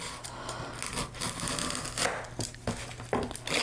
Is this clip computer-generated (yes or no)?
no